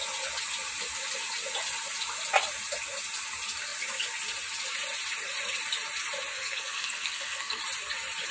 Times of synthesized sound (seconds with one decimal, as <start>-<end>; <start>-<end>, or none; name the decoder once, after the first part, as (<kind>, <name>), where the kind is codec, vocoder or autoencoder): 6.3-7.6 (codec, SNAC)